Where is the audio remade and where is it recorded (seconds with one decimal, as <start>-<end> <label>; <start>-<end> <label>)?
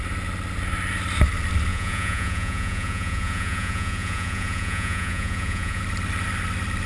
0.0-1.7 recorded; 1.7-5.8 remade; 5.8-6.9 recorded